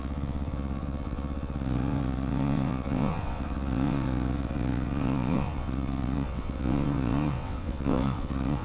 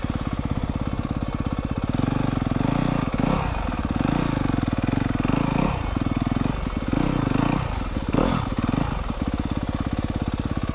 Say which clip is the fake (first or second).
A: first